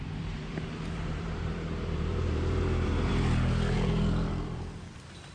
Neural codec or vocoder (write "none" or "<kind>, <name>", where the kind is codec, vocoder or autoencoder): vocoder, BigVGAN v2